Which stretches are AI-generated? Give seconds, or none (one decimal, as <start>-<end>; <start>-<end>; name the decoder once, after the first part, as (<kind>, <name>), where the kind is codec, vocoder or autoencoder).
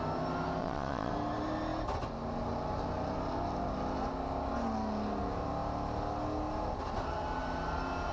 0.6-1.1 (vocoder, Vocos)